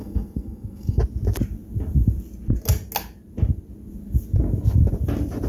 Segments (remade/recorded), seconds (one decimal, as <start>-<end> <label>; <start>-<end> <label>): 0.0-1.0 remade; 1.0-5.5 recorded